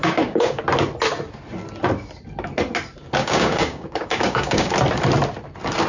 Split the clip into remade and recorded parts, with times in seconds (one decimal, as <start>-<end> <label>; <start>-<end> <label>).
0.0-0.6 remade; 0.6-3.2 recorded; 3.2-4.7 remade; 4.7-5.9 recorded